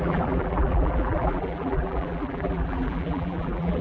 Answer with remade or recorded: remade